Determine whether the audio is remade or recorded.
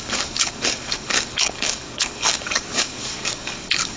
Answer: remade